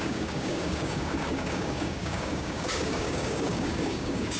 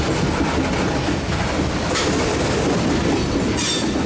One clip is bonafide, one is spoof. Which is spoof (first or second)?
first